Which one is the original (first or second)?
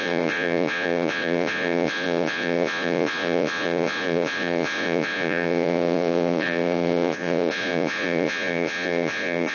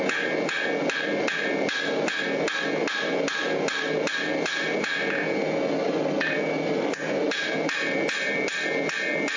second